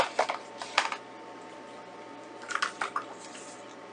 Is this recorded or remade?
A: recorded